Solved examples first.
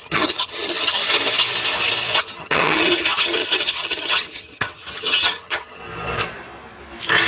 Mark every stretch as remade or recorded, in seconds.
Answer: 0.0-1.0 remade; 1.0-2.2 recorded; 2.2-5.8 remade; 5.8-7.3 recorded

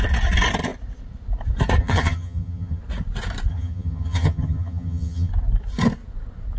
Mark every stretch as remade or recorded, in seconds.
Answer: 0.0-1.8 recorded; 1.8-2.8 remade; 2.8-3.5 recorded; 3.5-5.3 remade; 5.3-6.6 recorded

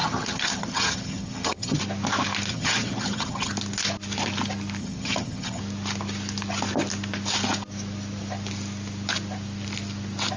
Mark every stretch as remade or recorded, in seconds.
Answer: 0.0-1.8 remade; 1.8-2.5 recorded; 2.5-3.5 remade; 3.5-4.8 recorded; 4.8-5.6 remade; 5.6-10.4 recorded

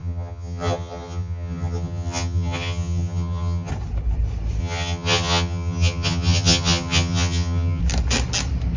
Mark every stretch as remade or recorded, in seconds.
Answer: 0.0-3.7 remade; 3.7-4.6 recorded; 4.6-7.8 remade; 7.8-8.8 recorded

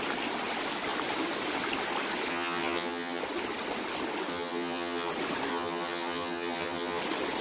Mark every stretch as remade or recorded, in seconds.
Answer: 0.0-2.3 recorded; 2.3-3.2 remade; 3.2-4.3 recorded; 4.3-5.1 remade; 5.1-5.5 recorded; 5.5-7.0 remade; 7.0-7.4 recorded